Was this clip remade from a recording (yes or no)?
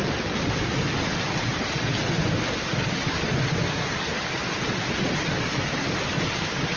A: no